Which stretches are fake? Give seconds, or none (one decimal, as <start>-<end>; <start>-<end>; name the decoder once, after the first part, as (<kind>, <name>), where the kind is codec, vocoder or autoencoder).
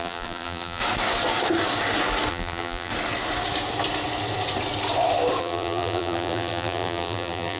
0.0-0.8 (vocoder, BigVGAN v2); 2.3-2.9; 5.4-7.6